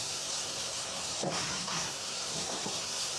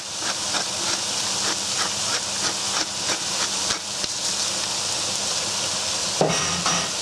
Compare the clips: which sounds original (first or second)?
second